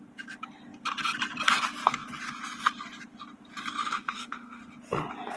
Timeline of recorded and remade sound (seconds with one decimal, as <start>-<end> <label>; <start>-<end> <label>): 0.0-3.8 recorded; 3.8-4.6 remade; 4.6-5.4 recorded